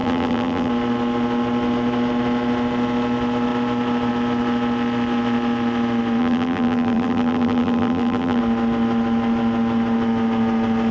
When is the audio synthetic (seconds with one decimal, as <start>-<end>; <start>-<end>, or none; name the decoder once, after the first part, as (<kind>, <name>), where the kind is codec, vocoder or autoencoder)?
0.0-0.7 (vocoder, BigVGAN v2); 6.2-8.4